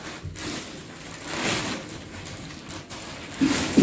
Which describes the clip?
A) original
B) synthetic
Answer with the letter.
A